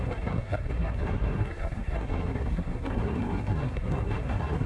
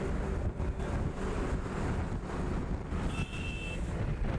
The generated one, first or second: first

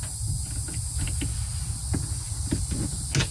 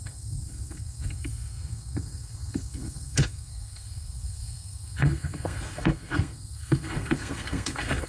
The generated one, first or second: second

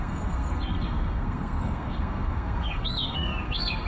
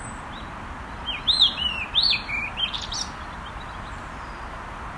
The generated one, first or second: first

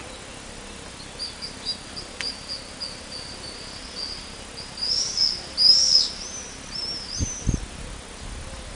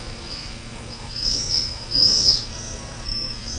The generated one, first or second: second